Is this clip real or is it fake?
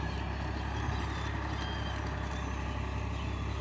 real